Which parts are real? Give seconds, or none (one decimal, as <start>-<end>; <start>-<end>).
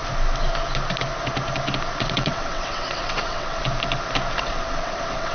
0.0-2.0; 3.6-4.4